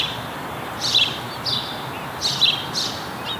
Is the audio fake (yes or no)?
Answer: no